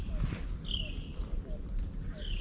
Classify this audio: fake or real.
real